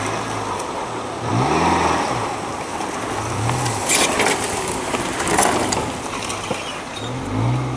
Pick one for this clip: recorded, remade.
recorded